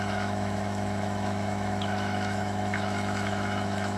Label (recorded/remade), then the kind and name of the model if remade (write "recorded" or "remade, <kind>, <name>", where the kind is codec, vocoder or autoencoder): remade, autoencoder, DAC-VAE